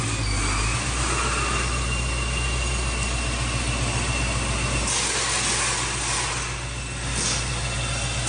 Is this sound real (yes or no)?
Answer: yes